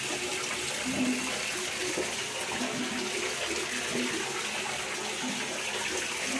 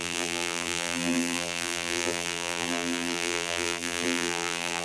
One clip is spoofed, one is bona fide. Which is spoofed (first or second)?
second